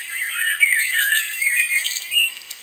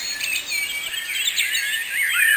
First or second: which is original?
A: second